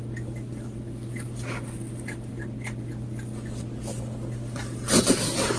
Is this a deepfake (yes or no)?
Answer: no